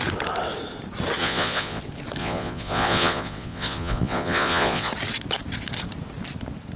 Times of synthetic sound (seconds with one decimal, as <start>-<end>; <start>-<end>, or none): 1.2-1.8; 2.2-4.9